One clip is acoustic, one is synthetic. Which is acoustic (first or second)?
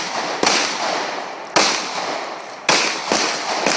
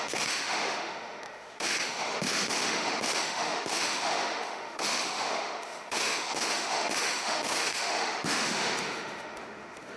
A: first